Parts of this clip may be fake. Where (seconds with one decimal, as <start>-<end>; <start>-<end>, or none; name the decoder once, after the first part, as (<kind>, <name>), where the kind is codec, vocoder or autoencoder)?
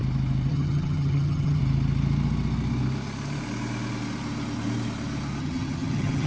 0.5-1.6 (vocoder, HiFi-GAN); 5.4-6.3